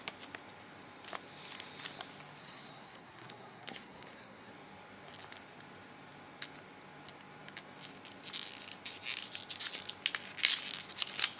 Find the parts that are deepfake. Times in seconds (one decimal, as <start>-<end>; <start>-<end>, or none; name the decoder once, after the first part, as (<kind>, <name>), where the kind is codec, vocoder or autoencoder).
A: 2.4-4.5 (codec, SNAC)